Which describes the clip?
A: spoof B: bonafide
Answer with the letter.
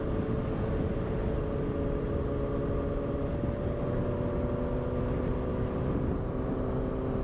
B